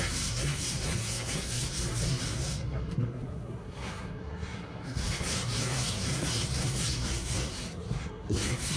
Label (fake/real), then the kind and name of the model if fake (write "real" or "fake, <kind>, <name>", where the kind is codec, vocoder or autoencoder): fake, codec, SNAC